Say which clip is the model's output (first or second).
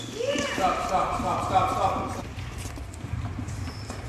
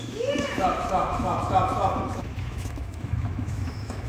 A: second